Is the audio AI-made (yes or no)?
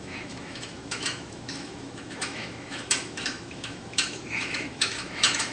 yes